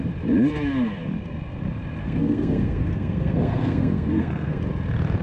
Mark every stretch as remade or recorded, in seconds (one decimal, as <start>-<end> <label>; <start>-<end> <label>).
0.0-2.0 recorded; 2.0-4.6 remade; 4.6-5.2 recorded